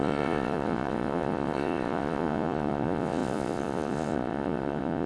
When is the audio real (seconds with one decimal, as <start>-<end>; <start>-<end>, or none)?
none